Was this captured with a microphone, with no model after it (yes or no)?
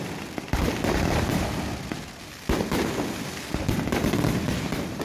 yes